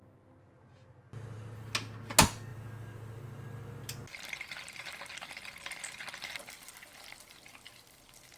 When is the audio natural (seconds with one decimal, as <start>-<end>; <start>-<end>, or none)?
0.0-8.4